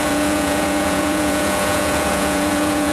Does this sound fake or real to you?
fake